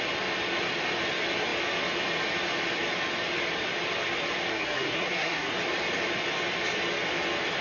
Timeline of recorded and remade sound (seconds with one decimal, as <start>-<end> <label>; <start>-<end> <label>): 0.0-4.5 recorded; 4.5-5.6 remade; 5.6-7.6 recorded